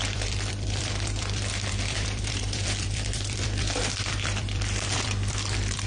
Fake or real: fake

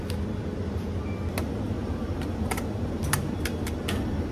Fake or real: real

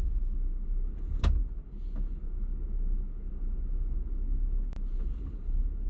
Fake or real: real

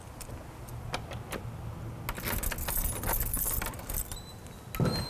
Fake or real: real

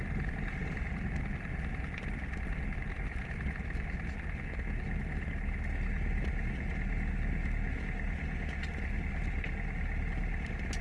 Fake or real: real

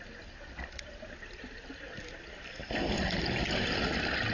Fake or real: real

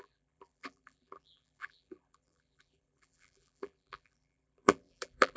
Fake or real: fake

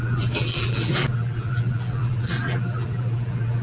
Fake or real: fake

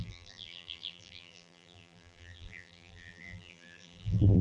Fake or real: fake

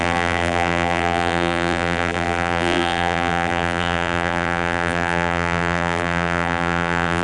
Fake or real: fake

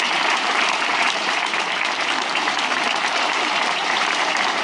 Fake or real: fake